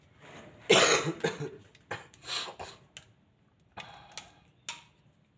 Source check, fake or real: real